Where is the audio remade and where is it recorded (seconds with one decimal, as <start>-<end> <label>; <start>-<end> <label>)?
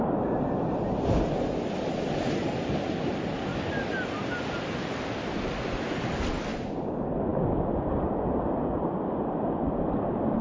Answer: 0.0-10.4 recorded